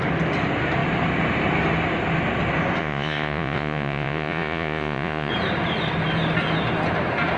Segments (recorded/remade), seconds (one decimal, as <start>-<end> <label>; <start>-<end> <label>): 0.0-2.8 recorded; 2.8-5.3 remade; 5.3-7.4 recorded